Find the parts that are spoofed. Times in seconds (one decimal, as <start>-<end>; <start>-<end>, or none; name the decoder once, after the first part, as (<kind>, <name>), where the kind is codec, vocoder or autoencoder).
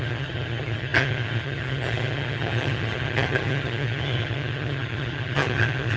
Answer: 0.0-6.0 (vocoder, HiFi-GAN)